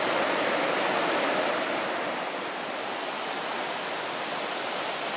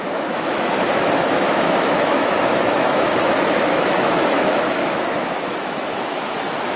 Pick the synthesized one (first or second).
second